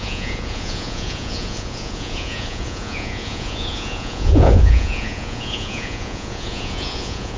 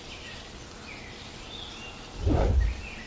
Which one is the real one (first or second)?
second